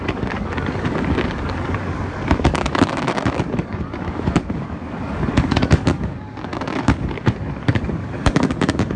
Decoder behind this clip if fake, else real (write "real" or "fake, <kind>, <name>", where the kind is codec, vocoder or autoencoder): fake, codec, DAC